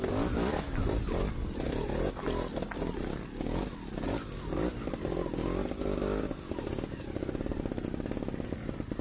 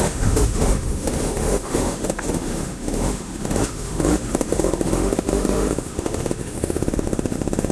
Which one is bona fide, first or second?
first